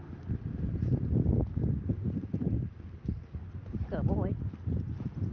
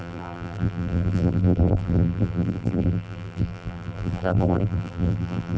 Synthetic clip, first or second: second